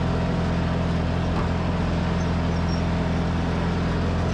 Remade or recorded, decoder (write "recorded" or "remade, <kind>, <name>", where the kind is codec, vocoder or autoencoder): recorded